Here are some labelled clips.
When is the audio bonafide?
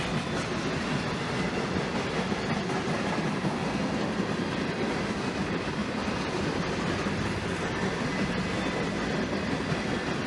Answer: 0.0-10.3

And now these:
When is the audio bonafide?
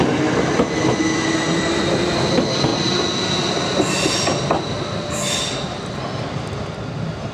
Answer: 0.0-7.3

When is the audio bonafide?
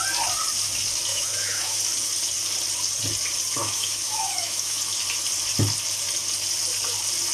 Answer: 0.0-1.1; 1.8-3.6; 4.8-7.3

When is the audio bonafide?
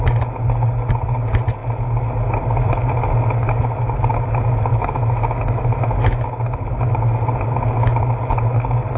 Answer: 0.0-4.7; 5.8-9.0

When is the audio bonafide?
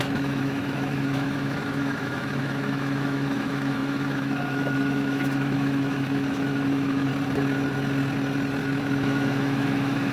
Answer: 7.1-8.8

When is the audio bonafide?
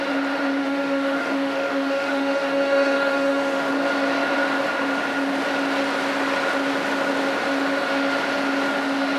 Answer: 0.0-0.6; 3.7-9.2